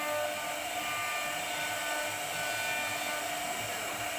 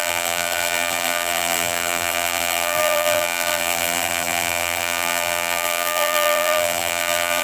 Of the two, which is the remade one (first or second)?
second